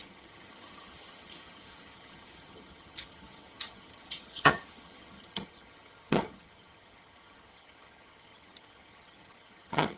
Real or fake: fake